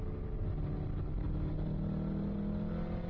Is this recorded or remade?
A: recorded